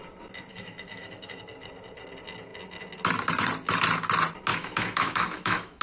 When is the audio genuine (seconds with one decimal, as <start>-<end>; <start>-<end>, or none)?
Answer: 0.0-0.5; 1.4-4.5